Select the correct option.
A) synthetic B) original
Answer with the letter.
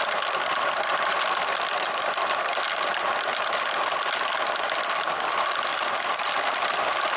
A